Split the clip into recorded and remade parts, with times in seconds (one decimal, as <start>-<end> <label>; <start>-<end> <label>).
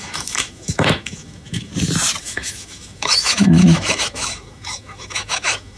0.0-1.7 remade; 1.7-2.2 recorded; 2.2-5.8 remade